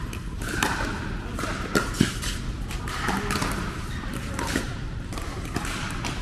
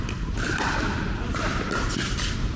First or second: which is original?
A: first